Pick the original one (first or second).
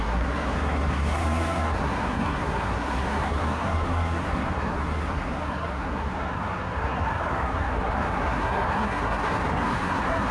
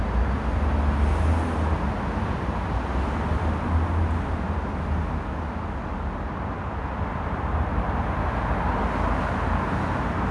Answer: second